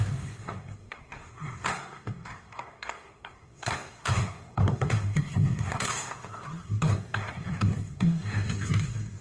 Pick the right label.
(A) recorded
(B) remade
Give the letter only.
B